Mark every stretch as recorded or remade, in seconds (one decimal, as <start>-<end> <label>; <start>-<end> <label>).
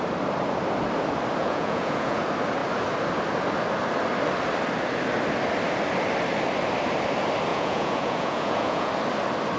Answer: 0.0-1.4 recorded; 1.4-2.2 remade; 2.2-7.5 recorded; 7.5-8.9 remade; 8.9-9.6 recorded